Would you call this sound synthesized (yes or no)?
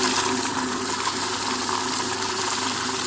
no